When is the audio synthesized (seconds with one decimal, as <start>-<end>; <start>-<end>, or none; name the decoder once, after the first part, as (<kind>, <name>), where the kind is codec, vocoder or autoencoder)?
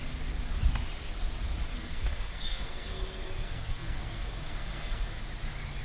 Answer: 1.7-5.2 (codec, SNAC)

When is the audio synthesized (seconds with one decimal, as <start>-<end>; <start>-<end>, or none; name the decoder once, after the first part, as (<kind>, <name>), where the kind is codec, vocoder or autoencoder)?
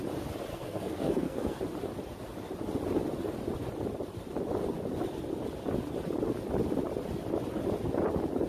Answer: 0.5-1.6 (codec, SNAC)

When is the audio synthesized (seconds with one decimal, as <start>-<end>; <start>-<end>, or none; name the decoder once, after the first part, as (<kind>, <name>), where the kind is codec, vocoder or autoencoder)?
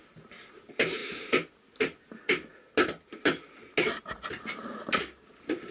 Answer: none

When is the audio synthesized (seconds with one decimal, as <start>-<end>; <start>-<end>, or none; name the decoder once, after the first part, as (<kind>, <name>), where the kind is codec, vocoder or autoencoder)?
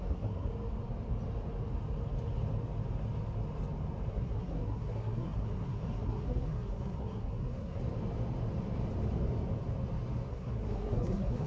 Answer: 0.0-0.5 (codec, SNAC); 4.1-7.8; 10.3-11.5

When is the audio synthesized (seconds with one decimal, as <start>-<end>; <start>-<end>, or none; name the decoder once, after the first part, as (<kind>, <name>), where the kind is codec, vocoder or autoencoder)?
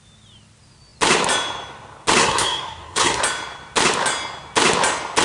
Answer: 2.2-3.2 (codec, SNAC)